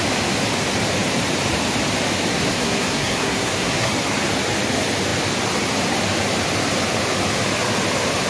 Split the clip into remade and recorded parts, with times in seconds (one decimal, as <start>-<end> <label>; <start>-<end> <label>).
0.0-2.3 recorded; 2.3-3.9 remade; 3.9-8.3 recorded